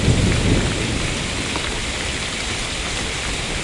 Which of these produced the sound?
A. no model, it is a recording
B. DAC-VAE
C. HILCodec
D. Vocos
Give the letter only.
A